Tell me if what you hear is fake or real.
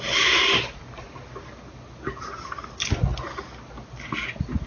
real